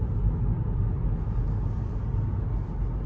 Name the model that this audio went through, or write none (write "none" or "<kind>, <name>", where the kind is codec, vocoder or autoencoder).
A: none